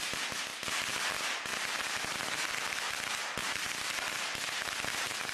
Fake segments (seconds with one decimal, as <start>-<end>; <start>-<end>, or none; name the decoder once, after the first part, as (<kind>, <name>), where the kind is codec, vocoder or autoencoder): 0.5-1.1 (vocoder, BigVGAN v2); 1.5-3.0; 3.4-4.1